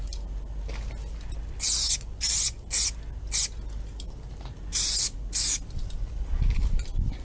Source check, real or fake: real